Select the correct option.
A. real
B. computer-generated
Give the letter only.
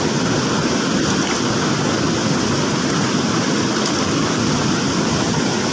A